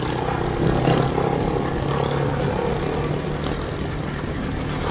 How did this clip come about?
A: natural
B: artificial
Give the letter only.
A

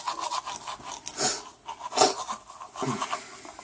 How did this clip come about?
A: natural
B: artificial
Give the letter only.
A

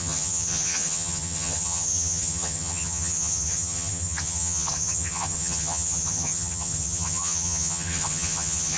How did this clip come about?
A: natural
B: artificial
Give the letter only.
B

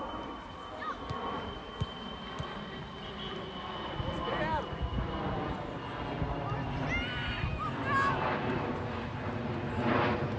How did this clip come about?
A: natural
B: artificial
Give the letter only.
A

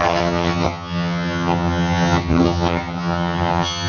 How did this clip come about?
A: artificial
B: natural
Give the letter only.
A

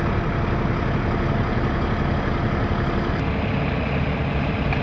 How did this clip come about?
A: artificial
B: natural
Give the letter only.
B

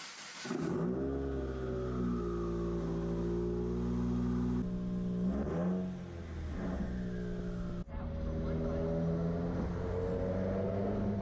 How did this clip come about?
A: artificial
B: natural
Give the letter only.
B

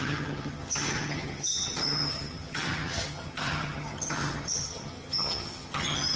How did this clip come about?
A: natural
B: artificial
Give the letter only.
B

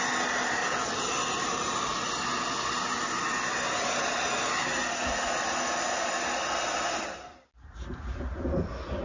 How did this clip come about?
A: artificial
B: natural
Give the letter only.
B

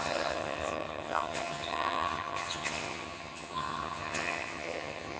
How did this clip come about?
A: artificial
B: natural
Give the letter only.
A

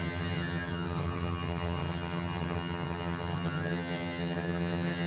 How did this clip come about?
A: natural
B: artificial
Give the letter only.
B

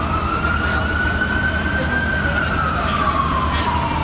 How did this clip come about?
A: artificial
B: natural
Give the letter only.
B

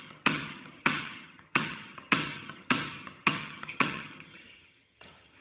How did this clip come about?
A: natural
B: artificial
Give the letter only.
B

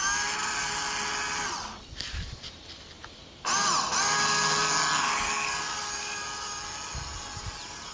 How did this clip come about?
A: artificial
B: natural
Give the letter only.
B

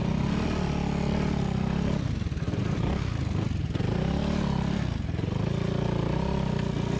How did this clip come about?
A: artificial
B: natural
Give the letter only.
B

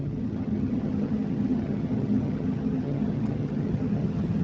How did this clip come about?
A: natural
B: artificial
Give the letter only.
B